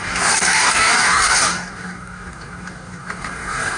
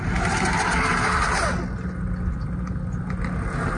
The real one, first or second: second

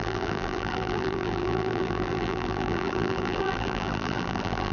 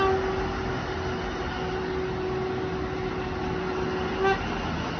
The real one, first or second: second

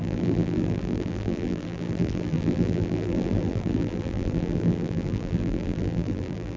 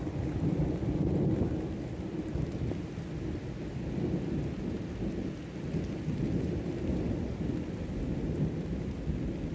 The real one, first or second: second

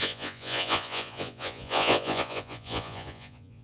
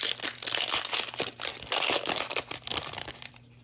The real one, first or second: second